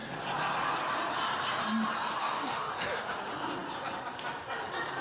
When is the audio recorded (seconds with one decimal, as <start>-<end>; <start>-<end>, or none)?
0.0-2.2; 2.7-5.0